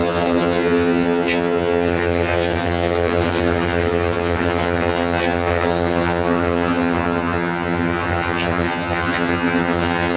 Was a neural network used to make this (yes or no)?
yes